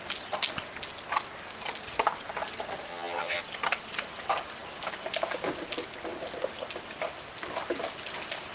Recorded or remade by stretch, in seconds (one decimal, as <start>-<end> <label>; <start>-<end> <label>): 0.0-2.9 recorded; 2.9-3.4 remade; 3.4-8.5 recorded